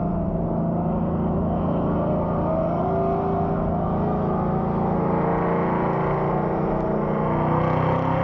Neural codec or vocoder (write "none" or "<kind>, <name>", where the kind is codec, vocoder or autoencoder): none